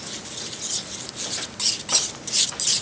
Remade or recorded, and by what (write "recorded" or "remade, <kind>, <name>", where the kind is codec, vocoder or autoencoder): recorded